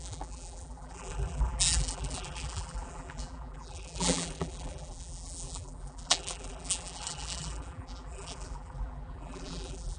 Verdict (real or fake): fake